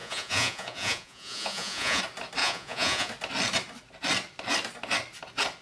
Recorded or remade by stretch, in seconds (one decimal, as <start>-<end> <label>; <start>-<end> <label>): 0.0-2.0 remade; 2.0-2.4 recorded; 2.4-3.1 remade; 3.1-5.6 recorded